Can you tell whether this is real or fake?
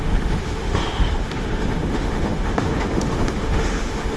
fake